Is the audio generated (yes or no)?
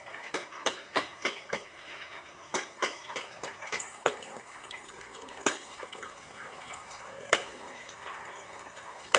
yes